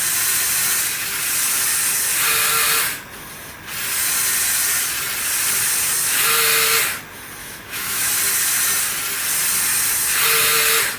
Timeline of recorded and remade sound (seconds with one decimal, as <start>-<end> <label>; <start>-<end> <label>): 0.0-7.4 recorded; 7.4-8.1 remade; 8.1-11.0 recorded